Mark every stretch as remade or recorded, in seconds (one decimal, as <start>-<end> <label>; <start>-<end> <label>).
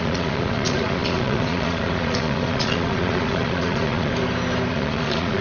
0.0-4.1 remade; 4.1-4.7 recorded; 4.7-5.4 remade